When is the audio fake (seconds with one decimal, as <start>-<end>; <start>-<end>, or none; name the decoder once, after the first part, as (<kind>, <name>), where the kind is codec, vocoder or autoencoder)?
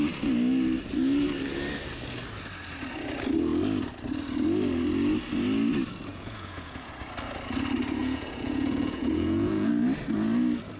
6.1-6.9 (vocoder, Vocos); 8.0-9.7